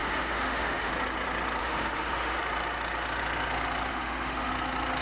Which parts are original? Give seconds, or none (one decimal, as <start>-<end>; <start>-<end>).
0.9-1.6; 2.4-3.9; 4.5-5.0